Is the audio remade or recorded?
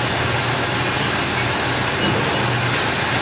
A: recorded